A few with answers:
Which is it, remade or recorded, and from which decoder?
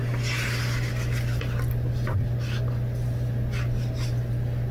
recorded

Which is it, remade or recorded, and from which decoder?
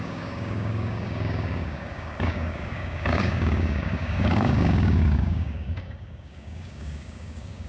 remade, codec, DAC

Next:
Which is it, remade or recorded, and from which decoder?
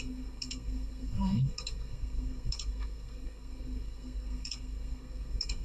remade, codec, SNAC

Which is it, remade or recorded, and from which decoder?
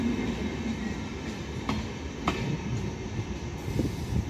recorded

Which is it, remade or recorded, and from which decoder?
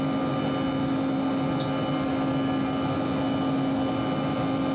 recorded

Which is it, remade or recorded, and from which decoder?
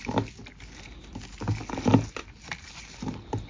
recorded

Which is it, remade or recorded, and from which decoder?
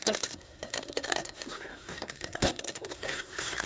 remade, codec, SNAC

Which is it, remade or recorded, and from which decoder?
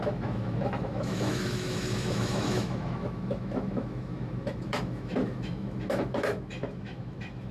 remade, autoencoder, DAC-VAE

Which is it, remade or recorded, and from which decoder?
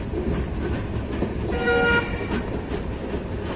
recorded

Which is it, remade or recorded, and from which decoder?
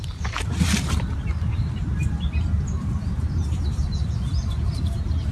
remade, vocoder, BigVGAN v2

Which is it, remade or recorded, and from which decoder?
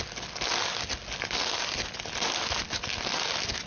recorded